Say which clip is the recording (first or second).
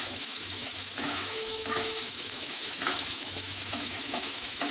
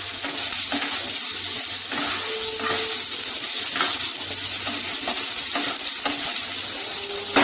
second